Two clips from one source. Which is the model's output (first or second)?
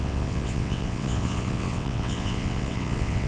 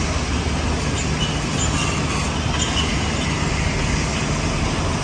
first